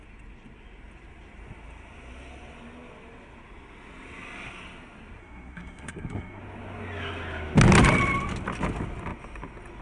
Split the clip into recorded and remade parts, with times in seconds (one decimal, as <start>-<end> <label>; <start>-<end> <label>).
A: 0.0-5.2 recorded; 5.2-6.4 remade; 6.4-9.8 recorded